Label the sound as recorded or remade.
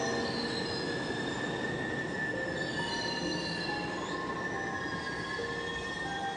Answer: recorded